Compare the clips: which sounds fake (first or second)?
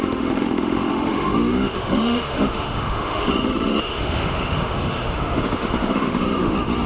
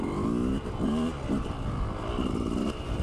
first